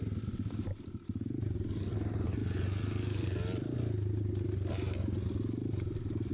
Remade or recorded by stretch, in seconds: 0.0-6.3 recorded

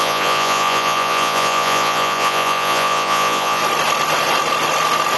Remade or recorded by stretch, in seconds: 0.0-3.6 remade; 3.6-5.2 recorded

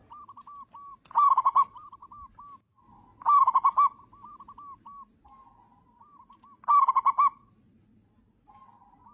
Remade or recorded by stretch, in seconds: 0.0-9.1 recorded